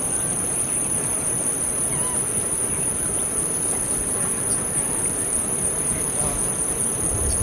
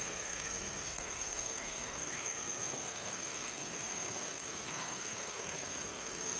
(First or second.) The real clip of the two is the first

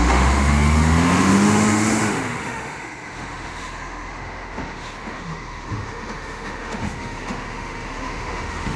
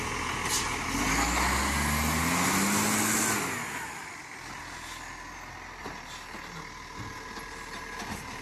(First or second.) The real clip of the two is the second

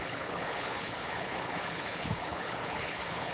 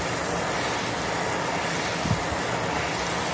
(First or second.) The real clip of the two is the second